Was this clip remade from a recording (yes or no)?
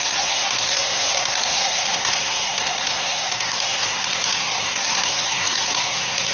yes